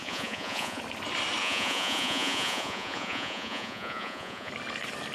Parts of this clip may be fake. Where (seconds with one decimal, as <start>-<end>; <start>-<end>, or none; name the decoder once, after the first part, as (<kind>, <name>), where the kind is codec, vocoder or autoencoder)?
0.0-0.8 (vocoder, Vocos); 1.4-4.5